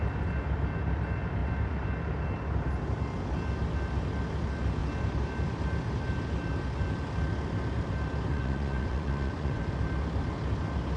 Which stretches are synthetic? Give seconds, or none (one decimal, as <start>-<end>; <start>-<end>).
8.3-9.6